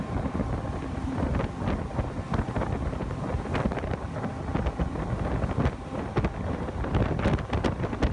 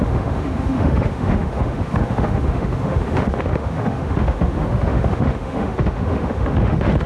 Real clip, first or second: first